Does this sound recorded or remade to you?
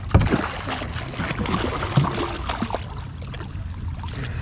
recorded